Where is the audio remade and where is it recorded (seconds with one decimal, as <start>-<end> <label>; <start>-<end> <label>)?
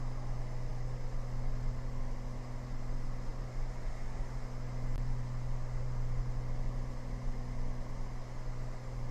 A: 0.0-9.1 recorded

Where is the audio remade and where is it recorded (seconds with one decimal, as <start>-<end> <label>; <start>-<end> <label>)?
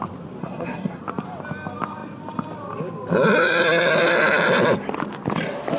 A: 0.0-0.4 recorded; 0.4-1.0 remade; 1.0-5.8 recorded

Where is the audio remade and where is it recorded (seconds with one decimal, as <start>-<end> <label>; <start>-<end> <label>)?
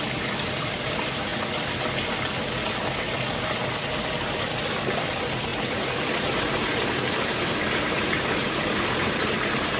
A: 0.0-1.3 remade; 1.3-5.0 recorded; 5.0-9.8 remade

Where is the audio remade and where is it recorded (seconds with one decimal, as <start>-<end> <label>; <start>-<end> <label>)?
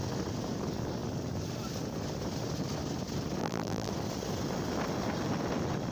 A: 0.0-3.4 recorded; 3.4-3.9 remade; 3.9-5.9 recorded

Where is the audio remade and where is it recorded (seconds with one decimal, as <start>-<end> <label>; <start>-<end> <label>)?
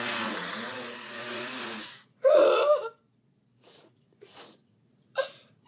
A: 0.0-2.4 remade; 2.4-3.6 recorded; 3.6-5.7 remade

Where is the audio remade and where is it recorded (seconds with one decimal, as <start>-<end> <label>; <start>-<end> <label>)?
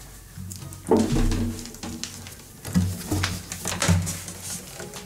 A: 0.0-5.1 recorded